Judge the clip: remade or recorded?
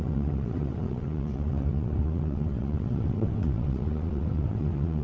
remade